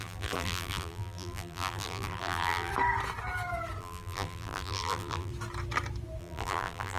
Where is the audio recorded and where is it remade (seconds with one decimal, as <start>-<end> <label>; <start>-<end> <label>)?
0.0-2.7 remade; 2.7-3.8 recorded; 3.8-5.3 remade; 5.3-6.2 recorded; 6.2-7.0 remade